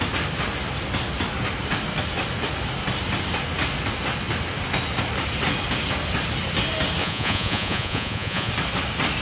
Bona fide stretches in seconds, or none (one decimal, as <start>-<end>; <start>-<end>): 0.0-7.0; 8.5-9.2